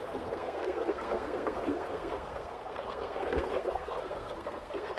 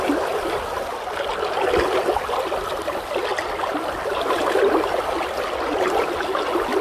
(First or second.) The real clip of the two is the second